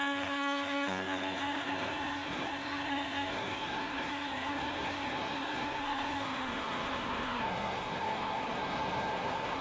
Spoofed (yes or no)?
yes